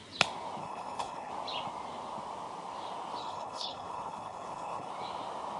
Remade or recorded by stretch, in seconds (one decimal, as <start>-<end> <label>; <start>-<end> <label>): 0.0-0.6 recorded; 0.6-1.3 remade; 1.3-3.2 recorded; 3.2-4.9 remade; 4.9-5.6 recorded